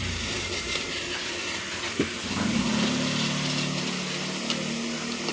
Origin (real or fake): real